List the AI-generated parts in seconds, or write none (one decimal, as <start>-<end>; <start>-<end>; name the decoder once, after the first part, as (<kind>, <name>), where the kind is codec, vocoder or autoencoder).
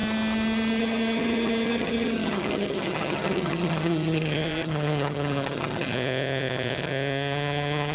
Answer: 0.8-7.9 (vocoder, HiFi-GAN)